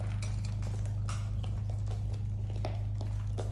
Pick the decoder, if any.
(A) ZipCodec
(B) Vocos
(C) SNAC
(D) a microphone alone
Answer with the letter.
D